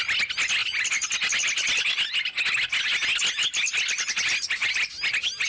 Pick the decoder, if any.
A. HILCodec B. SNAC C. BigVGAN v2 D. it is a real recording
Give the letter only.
D